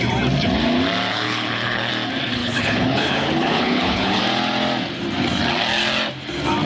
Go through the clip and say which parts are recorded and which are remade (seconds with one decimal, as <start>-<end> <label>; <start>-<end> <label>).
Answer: 0.0-1.1 recorded; 1.1-1.9 remade; 1.9-2.4 recorded; 2.4-4.2 remade; 4.2-6.7 recorded